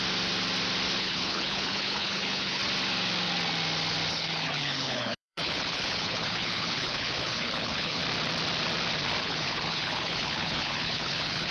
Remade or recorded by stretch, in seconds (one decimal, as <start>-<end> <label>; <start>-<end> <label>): 0.0-1.0 recorded; 1.0-2.6 remade; 2.6-4.1 recorded; 4.1-8.0 remade; 8.0-9.2 recorded; 9.2-11.5 remade